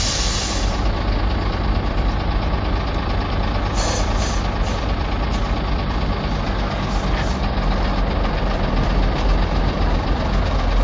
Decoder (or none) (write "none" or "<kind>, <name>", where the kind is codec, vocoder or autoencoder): none